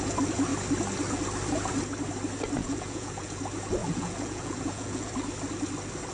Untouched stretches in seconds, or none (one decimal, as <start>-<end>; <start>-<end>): 0.0-2.6; 3.4-3.8; 5.1-6.1